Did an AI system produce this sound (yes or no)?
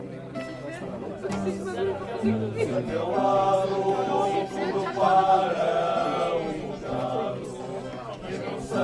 no